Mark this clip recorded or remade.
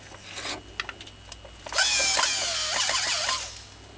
recorded